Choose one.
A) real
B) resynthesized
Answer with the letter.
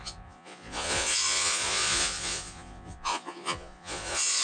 B